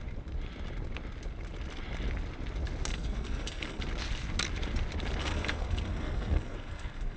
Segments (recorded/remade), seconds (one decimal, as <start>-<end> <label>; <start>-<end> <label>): 0.0-2.9 recorded; 2.9-3.8 remade; 3.8-5.2 recorded; 5.2-7.2 remade